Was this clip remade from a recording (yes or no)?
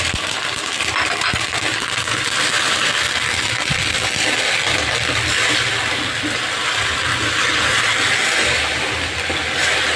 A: yes